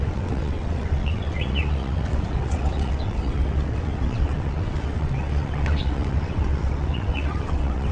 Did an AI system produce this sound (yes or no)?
yes